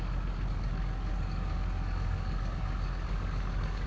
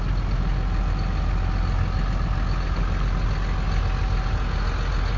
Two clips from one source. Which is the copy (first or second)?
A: first